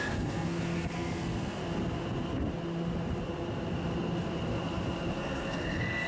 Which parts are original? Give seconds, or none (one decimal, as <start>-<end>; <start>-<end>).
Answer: 1.6-5.2